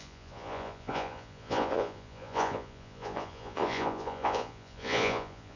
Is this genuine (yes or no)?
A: no